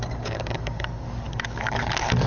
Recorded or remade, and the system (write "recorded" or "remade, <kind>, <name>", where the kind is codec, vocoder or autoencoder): remade, codec, DAC